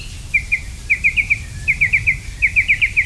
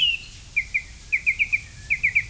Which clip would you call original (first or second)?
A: second